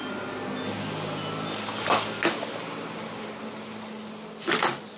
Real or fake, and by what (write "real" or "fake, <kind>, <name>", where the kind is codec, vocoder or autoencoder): real